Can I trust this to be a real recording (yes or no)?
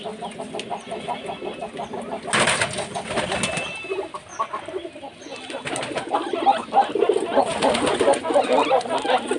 yes